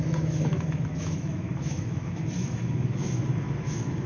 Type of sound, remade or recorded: remade